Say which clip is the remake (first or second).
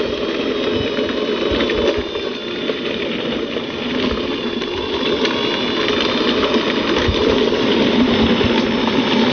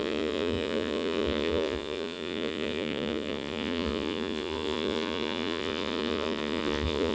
second